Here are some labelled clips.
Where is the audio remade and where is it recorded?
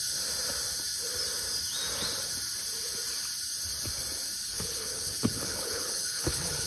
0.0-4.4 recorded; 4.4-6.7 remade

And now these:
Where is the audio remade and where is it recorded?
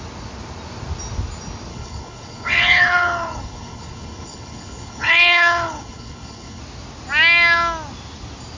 0.0-1.7 recorded; 1.7-6.6 remade; 6.6-8.6 recorded